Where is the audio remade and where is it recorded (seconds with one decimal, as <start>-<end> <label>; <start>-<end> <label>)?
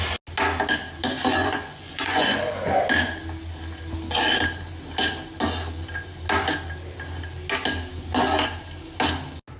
0.0-1.4 recorded; 1.4-2.7 remade; 2.7-9.6 recorded